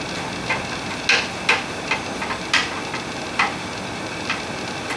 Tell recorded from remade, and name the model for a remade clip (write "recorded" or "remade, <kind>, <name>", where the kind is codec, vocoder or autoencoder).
recorded